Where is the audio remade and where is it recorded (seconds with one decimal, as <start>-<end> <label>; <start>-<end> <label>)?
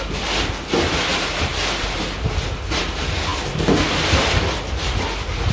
0.0-1.1 recorded; 1.1-2.2 remade; 2.2-5.5 recorded